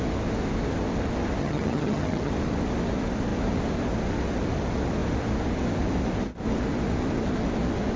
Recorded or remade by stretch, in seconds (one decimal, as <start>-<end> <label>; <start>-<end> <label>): 0.0-1.4 recorded; 1.4-2.3 remade; 2.3-8.0 recorded